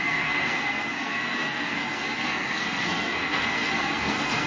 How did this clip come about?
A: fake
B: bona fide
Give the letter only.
A